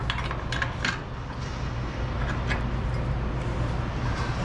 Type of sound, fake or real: real